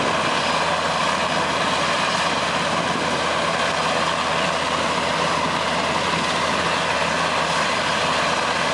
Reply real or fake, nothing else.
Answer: real